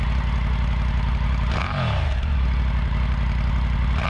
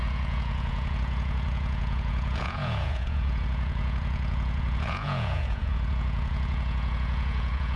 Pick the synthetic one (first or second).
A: second